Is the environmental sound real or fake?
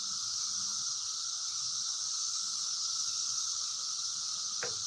real